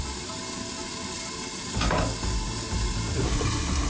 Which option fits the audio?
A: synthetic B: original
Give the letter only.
B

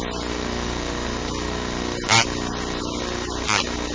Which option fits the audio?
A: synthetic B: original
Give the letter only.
B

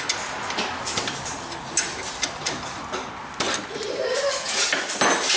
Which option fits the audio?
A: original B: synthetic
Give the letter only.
A